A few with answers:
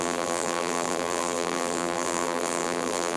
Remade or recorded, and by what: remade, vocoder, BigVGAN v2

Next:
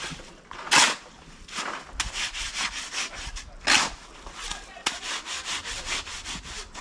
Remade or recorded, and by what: recorded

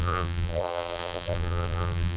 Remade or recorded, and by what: remade, vocoder, BigVGAN v2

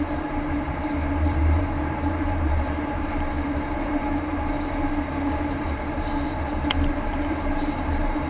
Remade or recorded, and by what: remade, vocoder, BigVGAN v2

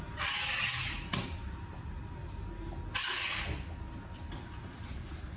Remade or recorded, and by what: recorded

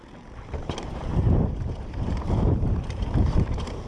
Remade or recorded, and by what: remade, vocoder, BigVGAN v2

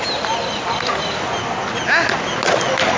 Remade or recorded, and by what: recorded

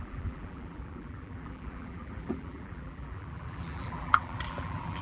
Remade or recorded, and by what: remade, vocoder, BigVGAN v2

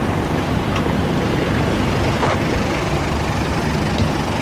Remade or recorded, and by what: remade, vocoder, BigVGAN v2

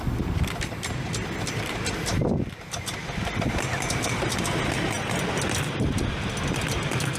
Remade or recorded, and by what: recorded